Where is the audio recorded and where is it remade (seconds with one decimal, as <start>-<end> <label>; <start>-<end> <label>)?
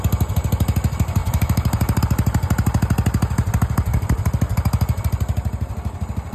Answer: 0.0-1.2 recorded; 1.2-2.0 remade; 2.0-6.3 recorded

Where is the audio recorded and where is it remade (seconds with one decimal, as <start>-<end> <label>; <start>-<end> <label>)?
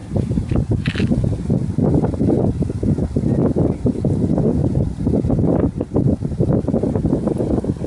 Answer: 0.0-0.5 remade; 0.5-3.4 recorded; 3.4-4.0 remade; 4.0-4.6 recorded; 4.6-6.5 remade; 6.5-7.9 recorded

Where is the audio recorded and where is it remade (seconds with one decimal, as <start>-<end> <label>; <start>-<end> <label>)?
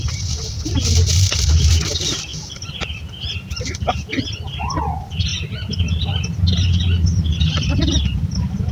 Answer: 0.0-8.7 recorded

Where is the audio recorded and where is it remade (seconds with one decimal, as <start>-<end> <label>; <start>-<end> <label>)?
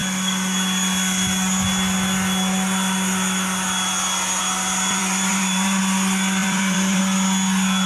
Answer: 0.0-5.0 recorded; 5.0-5.8 remade; 5.8-6.4 recorded; 6.4-7.0 remade; 7.0-7.9 recorded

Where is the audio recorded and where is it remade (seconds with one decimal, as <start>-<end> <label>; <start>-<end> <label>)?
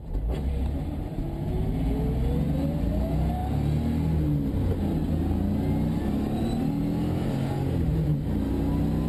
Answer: 0.0-1.2 remade; 1.2-7.9 recorded; 7.9-8.5 remade; 8.5-9.1 recorded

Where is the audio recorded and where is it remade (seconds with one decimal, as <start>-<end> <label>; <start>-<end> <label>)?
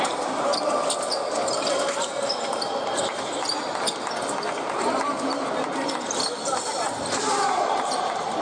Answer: 0.0-0.5 remade; 0.5-1.8 recorded; 1.8-3.3 remade; 3.3-6.6 recorded; 6.6-8.4 remade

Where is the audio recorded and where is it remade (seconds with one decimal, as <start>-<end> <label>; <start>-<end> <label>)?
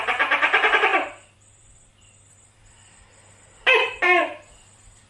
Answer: 0.0-2.8 remade; 2.8-4.2 recorded; 4.2-5.1 remade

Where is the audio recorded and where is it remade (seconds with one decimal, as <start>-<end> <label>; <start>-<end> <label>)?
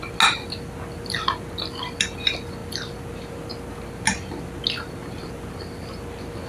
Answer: 0.0-6.5 recorded